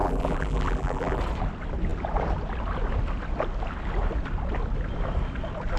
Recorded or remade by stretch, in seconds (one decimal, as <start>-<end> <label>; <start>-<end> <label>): 0.0-1.2 remade; 1.2-5.8 recorded